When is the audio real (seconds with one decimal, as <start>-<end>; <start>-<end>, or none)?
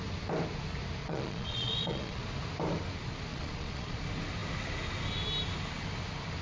0.0-1.0; 2.2-3.3; 4.0-6.4